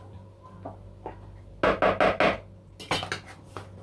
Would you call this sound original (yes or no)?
yes